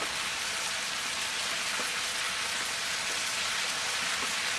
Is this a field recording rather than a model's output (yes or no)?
yes